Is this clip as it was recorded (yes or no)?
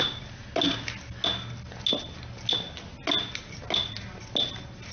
yes